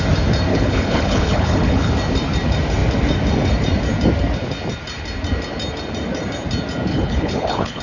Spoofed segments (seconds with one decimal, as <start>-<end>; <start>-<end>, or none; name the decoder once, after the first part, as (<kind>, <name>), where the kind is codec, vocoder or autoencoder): 0.5-1.9 (codec, HILCodec); 6.9-7.8